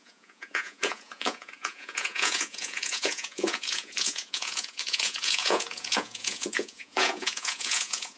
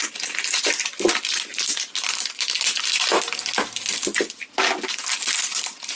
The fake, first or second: first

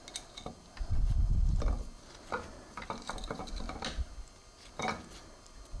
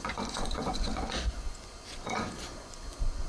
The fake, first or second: second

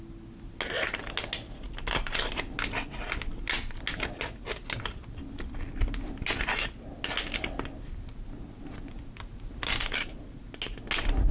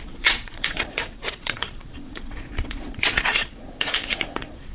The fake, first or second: second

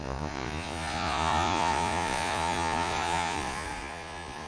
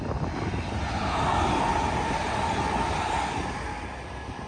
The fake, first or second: first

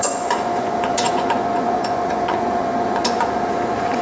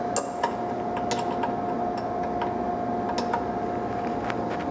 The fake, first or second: first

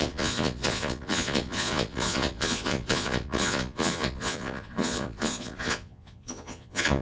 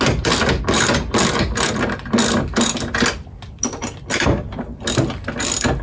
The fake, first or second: first